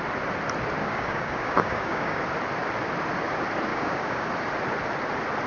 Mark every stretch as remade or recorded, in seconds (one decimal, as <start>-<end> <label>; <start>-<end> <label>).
0.0-0.8 recorded; 0.8-2.2 remade; 2.2-3.7 recorded; 3.7-4.3 remade; 4.3-5.5 recorded